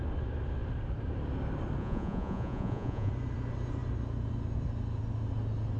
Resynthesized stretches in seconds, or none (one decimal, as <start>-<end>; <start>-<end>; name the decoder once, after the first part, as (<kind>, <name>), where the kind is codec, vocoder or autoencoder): 1.8-3.1 (vocoder, Vocos)